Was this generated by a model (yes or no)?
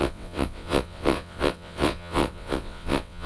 yes